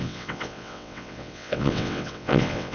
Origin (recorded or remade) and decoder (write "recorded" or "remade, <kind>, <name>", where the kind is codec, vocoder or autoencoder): remade, vocoder, WaveNeXt